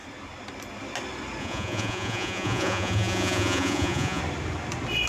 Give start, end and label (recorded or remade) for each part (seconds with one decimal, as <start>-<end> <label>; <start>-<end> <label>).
0.0-1.4 recorded; 1.4-4.2 remade; 4.2-5.1 recorded